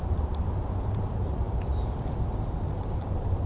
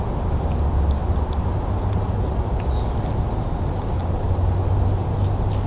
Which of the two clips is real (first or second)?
second